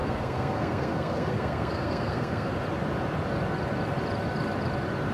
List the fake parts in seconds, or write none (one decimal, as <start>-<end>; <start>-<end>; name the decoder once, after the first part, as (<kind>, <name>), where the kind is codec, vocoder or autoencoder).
0.0-2.5 (codec, SNAC)